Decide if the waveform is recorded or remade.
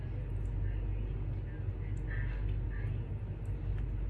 recorded